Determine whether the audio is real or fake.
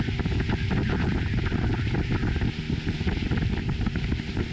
real